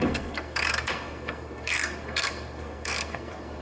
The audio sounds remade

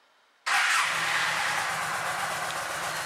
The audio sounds recorded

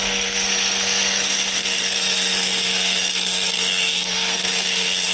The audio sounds remade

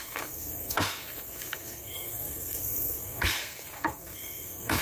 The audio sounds remade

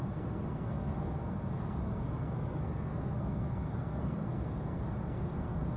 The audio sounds remade